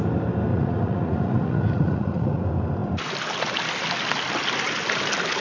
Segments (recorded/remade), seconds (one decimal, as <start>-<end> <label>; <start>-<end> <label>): 0.0-0.5 recorded; 0.5-2.4 remade; 2.4-5.4 recorded